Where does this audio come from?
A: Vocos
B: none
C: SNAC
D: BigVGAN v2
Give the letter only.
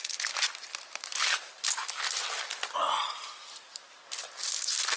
B